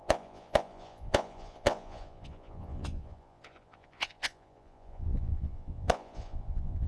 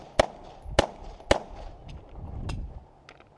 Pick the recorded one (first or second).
second